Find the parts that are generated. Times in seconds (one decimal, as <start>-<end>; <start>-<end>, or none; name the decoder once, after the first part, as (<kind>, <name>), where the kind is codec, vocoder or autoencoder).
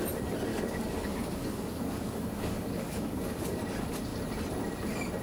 0.5-3.6 (codec, DAC)